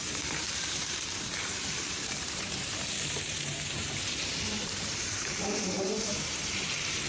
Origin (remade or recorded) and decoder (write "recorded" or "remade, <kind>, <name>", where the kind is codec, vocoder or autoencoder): remade, vocoder, BigVGAN v2